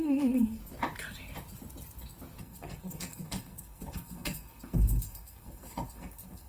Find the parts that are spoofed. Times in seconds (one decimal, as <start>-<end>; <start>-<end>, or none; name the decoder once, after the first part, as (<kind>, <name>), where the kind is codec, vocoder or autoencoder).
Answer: 0.0-0.6 (codec, SNAC); 2.4-6.5